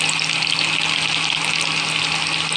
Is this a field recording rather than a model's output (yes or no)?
yes